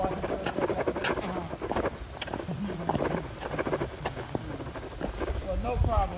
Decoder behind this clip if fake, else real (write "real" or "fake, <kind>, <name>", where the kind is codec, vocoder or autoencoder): fake, vocoder, BigVGAN v2